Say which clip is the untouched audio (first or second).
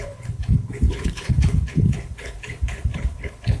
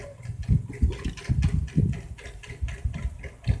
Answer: second